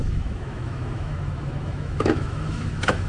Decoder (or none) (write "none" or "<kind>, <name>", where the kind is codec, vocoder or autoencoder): autoencoder, DAC-VAE